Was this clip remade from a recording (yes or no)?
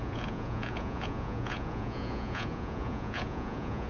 yes